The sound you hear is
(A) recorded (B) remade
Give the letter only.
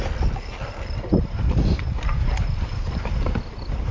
A